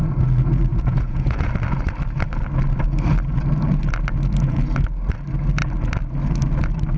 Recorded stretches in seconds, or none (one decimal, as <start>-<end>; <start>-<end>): 0.0-0.7; 1.5-7.0